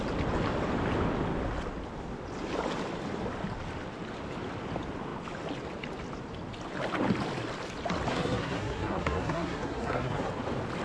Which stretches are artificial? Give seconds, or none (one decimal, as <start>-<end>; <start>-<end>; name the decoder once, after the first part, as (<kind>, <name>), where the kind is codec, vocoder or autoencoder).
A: 8.1-10.3 (codec, SNAC)